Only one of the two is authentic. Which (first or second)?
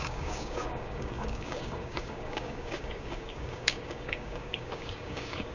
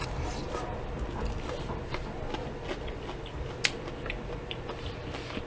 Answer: second